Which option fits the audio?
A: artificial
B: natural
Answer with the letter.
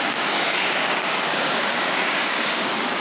A